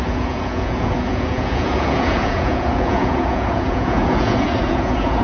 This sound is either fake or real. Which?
fake